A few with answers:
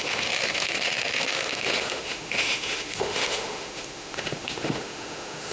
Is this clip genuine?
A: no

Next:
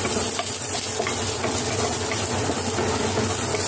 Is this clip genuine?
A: yes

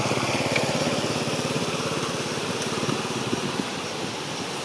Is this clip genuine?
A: yes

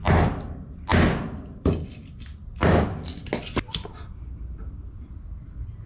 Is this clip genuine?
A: yes